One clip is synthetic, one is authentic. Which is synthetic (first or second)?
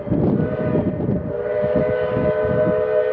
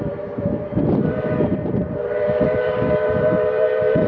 second